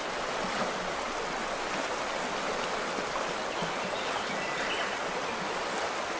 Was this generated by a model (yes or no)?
no